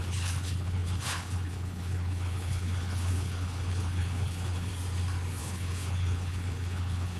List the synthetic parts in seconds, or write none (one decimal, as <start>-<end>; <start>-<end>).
0.0-4.7; 5.4-7.2